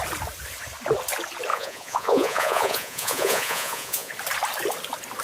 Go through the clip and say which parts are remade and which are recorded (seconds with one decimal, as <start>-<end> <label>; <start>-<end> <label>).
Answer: 0.0-1.5 recorded; 1.5-4.1 remade; 4.1-5.2 recorded